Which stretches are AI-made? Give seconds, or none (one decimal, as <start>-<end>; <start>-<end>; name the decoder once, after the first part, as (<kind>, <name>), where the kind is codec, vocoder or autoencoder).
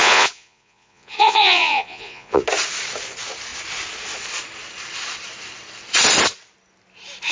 0.0-2.4 (vocoder, Vocos)